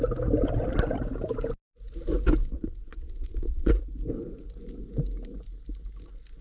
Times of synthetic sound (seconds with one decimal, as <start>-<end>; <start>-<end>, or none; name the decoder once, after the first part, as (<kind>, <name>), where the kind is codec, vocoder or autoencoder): 2.4-3.7 (vocoder, Vocos)